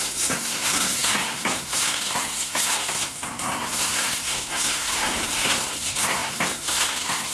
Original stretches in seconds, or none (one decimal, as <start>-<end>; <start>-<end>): none